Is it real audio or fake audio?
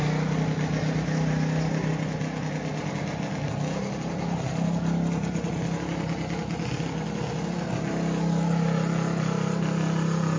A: real